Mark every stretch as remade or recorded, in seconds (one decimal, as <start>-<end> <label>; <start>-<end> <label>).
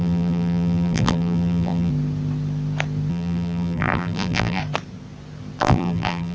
0.0-1.9 remade; 1.9-3.1 recorded; 3.1-4.6 remade; 4.6-5.6 recorded; 5.6-6.3 remade